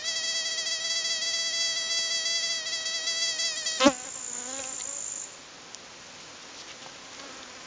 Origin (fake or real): real